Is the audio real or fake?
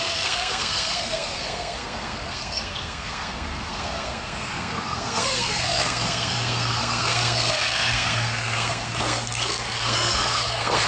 fake